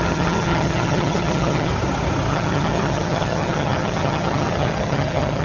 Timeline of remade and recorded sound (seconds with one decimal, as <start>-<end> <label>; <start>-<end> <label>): 0.0-1.7 remade; 1.7-2.3 recorded; 2.3-5.4 remade